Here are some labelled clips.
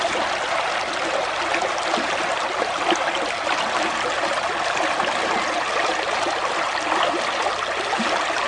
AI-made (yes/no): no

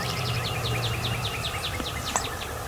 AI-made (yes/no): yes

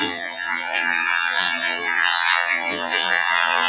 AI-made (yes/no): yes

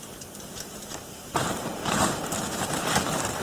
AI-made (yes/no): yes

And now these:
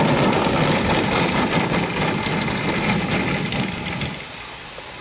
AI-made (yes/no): no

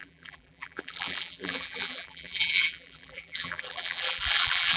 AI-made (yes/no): yes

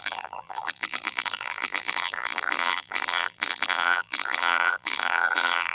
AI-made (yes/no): yes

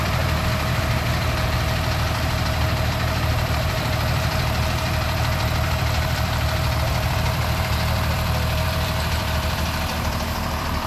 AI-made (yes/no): yes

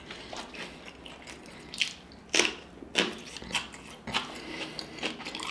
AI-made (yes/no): no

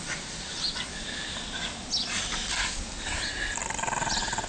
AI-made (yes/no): no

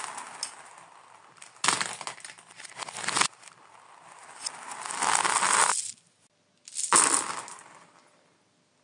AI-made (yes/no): no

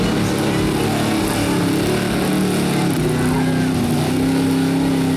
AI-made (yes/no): no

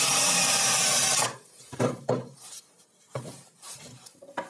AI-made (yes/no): yes